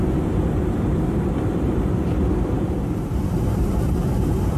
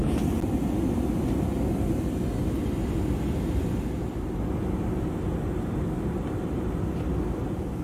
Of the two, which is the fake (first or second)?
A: first